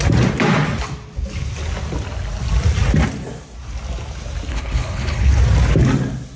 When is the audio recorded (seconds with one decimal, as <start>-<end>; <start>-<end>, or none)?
0.0-4.5; 5.4-6.4

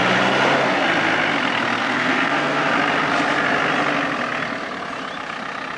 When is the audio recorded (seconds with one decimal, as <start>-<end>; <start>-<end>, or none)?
0.0-1.8; 2.7-5.8